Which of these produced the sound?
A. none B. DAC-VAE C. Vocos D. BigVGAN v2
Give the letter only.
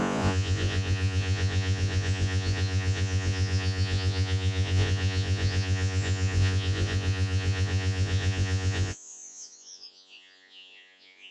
C